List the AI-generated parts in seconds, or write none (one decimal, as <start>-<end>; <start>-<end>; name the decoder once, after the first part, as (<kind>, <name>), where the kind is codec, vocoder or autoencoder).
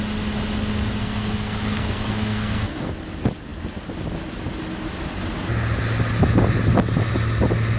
1.0-2.9 (codec, SNAC)